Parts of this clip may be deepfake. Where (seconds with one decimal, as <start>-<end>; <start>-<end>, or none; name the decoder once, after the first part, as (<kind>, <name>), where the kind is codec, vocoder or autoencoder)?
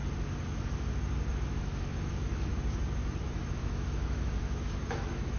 1.3-2.5 (autoencoder, DAC-VAE); 3.2-5.4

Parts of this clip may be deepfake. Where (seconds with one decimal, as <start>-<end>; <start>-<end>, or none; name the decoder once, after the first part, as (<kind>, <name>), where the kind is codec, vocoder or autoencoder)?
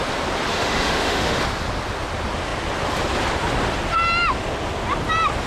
0.5-1.4 (autoencoder, DAC-VAE)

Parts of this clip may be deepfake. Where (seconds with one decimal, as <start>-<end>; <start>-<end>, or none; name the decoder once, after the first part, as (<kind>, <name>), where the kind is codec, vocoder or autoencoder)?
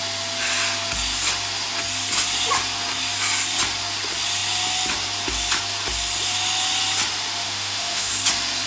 7.4-8.1 (autoencoder, DAC-VAE)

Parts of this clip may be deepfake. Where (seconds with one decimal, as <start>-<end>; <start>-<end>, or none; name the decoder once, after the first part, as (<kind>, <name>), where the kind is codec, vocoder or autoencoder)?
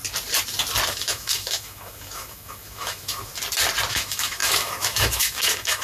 0.9-3.3 (autoencoder, DAC-VAE); 3.9-5.8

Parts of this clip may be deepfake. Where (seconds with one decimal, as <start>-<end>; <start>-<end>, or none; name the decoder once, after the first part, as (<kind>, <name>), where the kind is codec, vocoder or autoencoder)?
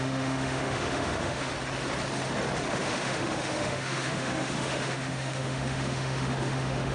0.0-1.5 (autoencoder, DAC-VAE); 2.7-6.9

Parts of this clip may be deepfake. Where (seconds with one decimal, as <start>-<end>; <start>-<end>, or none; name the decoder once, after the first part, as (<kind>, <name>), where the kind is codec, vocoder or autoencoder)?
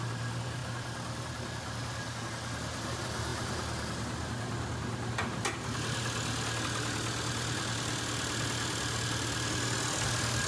none